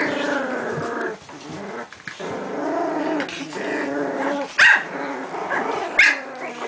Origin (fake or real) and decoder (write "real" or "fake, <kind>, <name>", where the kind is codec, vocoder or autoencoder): real